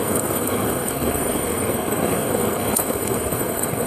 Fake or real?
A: fake